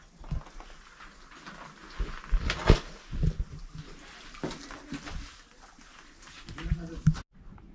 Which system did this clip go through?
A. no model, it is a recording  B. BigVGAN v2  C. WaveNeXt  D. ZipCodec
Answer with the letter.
A